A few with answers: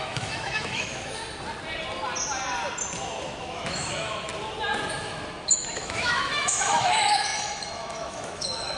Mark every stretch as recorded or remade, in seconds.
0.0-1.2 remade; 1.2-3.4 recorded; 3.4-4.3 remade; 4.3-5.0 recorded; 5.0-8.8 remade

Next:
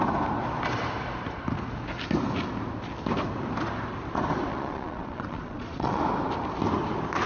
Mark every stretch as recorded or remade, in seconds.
0.0-4.5 recorded; 4.5-6.0 remade; 6.0-7.3 recorded

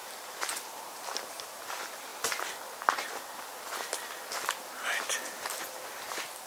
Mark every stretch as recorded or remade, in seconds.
0.0-2.1 remade; 2.1-6.0 recorded; 6.0-6.5 remade

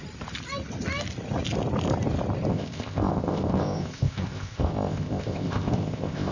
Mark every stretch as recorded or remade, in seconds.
0.0-2.5 recorded; 2.5-6.3 remade

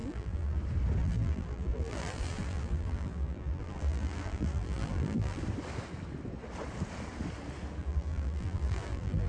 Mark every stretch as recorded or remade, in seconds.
0.0-0.6 remade; 0.6-1.0 recorded; 1.0-5.4 remade; 5.4-7.8 recorded; 7.8-9.3 remade

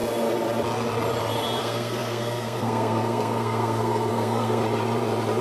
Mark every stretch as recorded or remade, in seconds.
0.0-1.6 recorded; 1.6-4.6 remade; 4.6-5.4 recorded

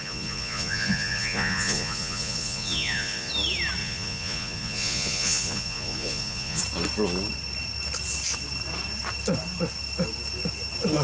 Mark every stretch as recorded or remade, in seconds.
0.0-3.3 remade; 3.3-3.8 recorded; 3.8-6.6 remade; 6.6-11.0 recorded

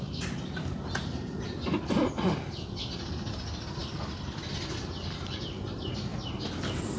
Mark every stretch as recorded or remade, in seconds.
0.0-7.0 recorded